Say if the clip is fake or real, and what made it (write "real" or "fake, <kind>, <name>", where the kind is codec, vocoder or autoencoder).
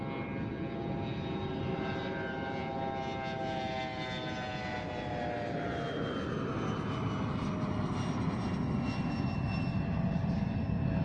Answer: real